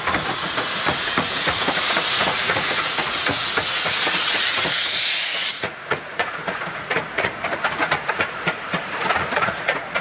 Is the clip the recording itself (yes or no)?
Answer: no